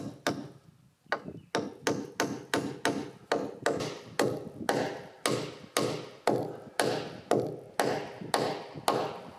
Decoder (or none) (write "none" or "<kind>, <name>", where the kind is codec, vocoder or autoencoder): none